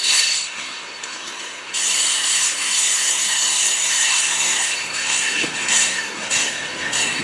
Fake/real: fake